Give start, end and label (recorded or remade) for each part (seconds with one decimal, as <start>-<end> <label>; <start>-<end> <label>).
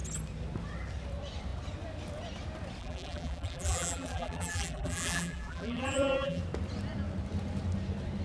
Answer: 0.0-2.8 recorded; 2.8-6.4 remade; 6.4-8.2 recorded